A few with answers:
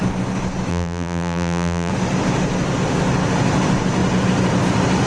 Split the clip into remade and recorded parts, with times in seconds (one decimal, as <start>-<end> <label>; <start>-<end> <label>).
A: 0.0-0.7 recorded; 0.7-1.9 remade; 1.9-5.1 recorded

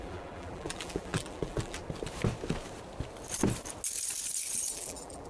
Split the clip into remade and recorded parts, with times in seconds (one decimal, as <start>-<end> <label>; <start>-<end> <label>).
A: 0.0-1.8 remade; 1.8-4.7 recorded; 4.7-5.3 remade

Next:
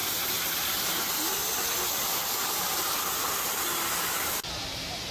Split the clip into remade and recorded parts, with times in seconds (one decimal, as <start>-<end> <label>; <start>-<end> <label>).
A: 0.0-0.6 remade; 0.6-1.4 recorded; 1.4-3.0 remade; 3.0-5.1 recorded

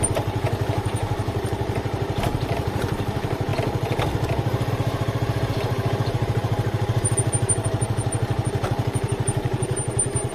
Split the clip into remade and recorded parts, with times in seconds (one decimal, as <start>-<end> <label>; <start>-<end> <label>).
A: 0.0-3.5 remade; 3.5-4.7 recorded; 4.7-10.3 remade

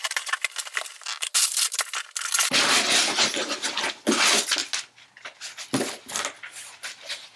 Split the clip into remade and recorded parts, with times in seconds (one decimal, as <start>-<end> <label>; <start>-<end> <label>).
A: 0.0-7.4 recorded